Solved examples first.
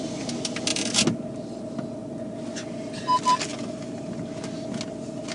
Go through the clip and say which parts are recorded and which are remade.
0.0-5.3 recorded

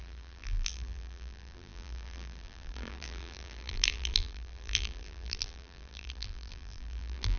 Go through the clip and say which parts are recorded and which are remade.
0.0-7.4 remade

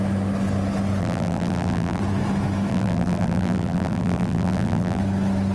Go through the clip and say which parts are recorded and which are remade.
0.0-1.0 recorded; 1.0-2.0 remade; 2.0-2.7 recorded; 2.7-5.0 remade; 5.0-5.5 recorded